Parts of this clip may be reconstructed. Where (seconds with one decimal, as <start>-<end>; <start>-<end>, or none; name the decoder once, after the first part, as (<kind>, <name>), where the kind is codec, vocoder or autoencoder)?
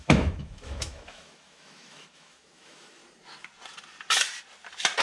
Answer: 0.0-3.0 (autoencoder, DAC-VAE)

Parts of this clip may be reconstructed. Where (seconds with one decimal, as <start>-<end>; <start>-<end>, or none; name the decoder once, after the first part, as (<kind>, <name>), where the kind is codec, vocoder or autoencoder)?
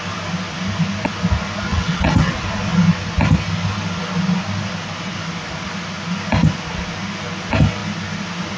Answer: 1.7-2.3 (vocoder, WaveNeXt)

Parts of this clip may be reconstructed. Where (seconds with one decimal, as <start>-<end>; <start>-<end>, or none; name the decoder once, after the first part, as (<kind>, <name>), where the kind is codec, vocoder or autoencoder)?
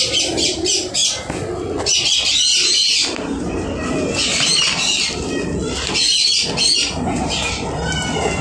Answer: none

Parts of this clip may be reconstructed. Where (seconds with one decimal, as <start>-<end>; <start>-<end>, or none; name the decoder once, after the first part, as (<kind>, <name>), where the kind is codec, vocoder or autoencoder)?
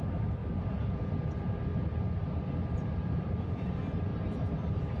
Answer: 0.4-1.1 (vocoder, BigVGAN v2); 4.1-5.0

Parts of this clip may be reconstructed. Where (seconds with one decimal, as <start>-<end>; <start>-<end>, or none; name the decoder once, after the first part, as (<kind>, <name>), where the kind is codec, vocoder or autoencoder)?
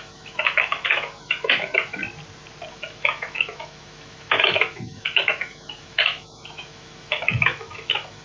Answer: 0.0-2.0 (autoencoder, DAC-VAE); 2.7-8.2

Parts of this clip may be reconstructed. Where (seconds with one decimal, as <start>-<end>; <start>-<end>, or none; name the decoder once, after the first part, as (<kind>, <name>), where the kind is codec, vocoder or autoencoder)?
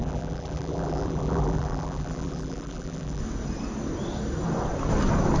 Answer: 0.0-3.2 (vocoder, BigVGAN v2)